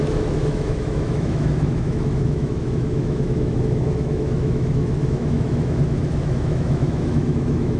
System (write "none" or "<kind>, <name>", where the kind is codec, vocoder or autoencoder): autoencoder, DAC-VAE